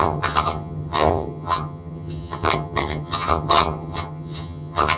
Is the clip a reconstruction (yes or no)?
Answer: yes